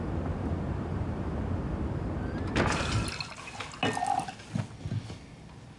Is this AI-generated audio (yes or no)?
no